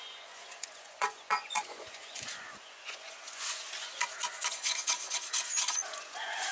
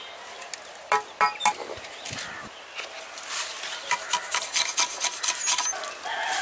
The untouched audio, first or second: second